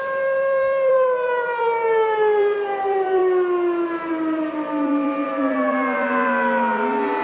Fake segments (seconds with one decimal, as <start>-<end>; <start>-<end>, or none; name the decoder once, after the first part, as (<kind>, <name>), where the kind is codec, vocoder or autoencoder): 0.0-3.2 (vocoder, BigVGAN v2); 4.1-7.2